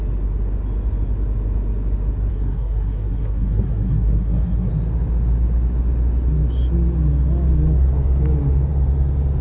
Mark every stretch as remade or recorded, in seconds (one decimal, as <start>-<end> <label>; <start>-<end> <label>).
0.0-2.3 recorded; 2.3-4.7 remade; 4.7-9.4 recorded